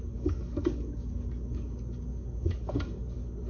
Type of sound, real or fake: fake